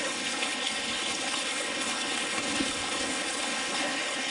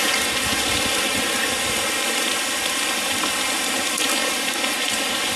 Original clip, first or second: second